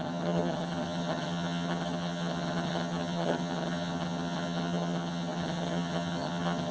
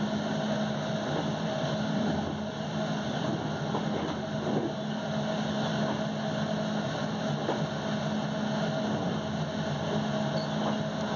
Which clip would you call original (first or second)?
second